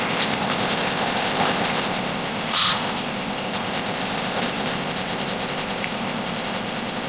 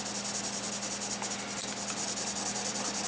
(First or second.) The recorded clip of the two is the second